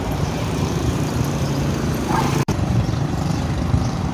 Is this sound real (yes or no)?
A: no